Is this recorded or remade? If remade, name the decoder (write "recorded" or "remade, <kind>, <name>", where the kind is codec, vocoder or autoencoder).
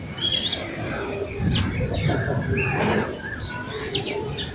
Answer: recorded